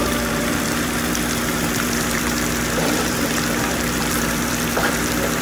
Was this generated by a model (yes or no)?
yes